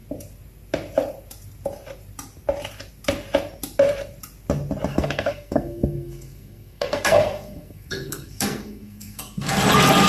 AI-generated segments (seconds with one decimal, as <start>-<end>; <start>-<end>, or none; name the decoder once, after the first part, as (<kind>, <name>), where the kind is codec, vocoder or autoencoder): 4.9-9.5 (codec, SNAC)